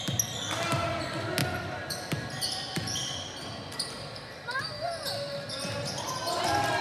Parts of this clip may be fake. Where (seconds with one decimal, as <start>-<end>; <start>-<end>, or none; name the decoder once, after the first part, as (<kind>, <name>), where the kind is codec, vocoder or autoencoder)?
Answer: none